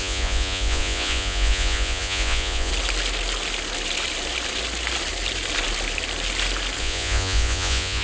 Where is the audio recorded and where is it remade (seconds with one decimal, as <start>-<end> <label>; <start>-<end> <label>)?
0.0-2.7 remade; 2.7-6.8 recorded; 6.8-8.0 remade